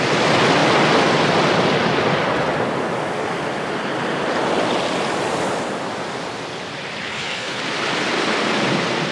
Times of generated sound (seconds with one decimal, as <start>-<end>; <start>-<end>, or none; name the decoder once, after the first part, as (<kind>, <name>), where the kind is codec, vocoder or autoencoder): 7.1-7.6 (codec, HILCodec)

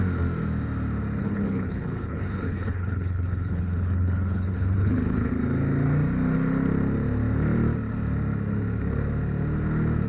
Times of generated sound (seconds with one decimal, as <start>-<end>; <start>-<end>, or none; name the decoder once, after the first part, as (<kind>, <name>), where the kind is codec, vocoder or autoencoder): 1.2-5.3 (codec, HILCodec)

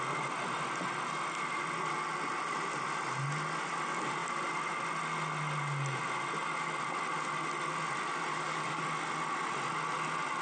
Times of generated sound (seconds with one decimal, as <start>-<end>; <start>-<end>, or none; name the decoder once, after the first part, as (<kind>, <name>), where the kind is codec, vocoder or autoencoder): 8.3-8.8 (codec, DAC)

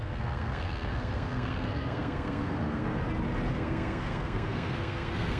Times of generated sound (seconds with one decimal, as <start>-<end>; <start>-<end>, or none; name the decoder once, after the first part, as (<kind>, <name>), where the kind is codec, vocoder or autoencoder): 0.0-3.0 (codec, SNAC); 3.5-5.4

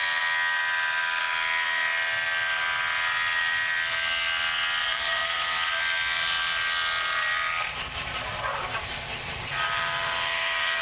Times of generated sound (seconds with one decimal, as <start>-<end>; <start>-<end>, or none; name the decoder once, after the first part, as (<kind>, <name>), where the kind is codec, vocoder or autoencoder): 4.8-5.2 (vocoder, BigVGAN v2); 9.3-10.8

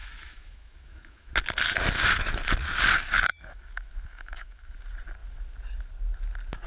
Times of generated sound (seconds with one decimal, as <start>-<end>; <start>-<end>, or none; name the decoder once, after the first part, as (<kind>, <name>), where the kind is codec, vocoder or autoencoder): 0.0-1.3 (autoencoder, DAC-VAE); 3.3-4.7

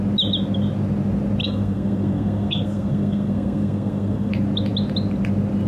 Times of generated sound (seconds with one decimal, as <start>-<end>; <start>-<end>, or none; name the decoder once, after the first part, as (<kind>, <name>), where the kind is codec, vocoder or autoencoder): 1.4-4.3 (codec, SNAC)

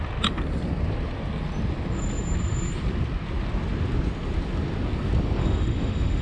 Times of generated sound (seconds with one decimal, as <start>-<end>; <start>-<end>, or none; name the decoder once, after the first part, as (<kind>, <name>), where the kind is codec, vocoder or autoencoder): 5.4-6.2 (autoencoder, DAC-VAE)